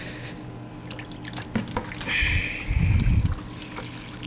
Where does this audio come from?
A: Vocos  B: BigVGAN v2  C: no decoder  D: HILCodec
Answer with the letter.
C